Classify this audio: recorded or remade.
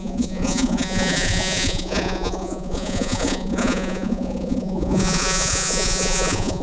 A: remade